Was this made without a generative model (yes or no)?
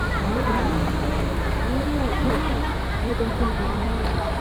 no